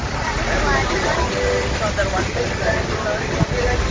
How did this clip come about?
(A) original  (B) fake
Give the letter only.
A